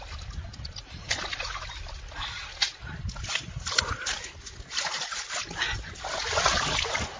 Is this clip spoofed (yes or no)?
no